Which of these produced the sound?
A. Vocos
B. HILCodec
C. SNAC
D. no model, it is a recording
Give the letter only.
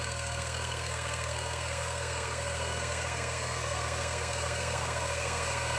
C